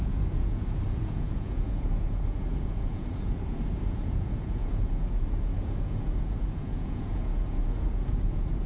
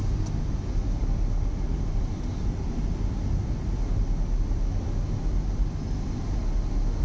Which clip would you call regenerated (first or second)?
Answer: first